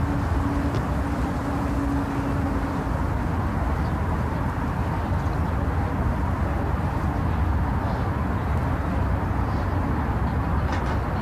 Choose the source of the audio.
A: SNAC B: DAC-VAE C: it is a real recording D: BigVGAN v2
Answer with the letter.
C